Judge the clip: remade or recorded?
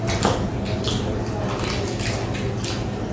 recorded